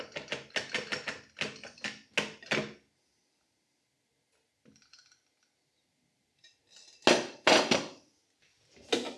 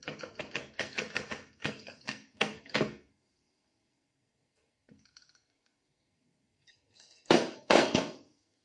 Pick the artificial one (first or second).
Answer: second